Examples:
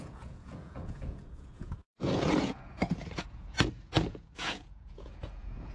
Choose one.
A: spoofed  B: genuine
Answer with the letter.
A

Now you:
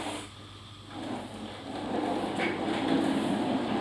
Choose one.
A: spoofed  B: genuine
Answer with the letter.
B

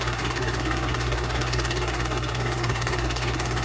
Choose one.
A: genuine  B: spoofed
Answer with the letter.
B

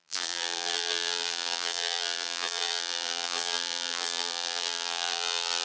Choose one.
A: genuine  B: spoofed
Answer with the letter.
B